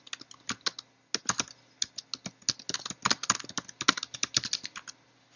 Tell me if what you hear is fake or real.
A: real